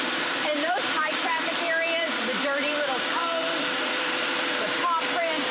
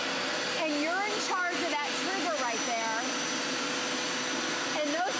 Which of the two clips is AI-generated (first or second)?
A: first